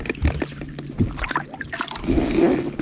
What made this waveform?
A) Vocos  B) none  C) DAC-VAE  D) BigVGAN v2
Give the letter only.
B